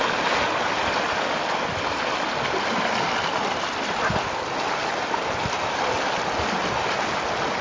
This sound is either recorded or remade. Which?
recorded